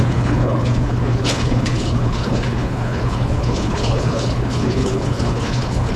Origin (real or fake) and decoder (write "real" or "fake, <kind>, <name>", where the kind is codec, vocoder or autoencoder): fake, codec, HILCodec